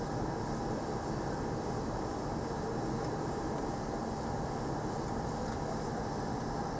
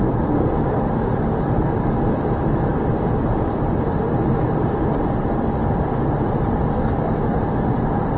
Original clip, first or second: first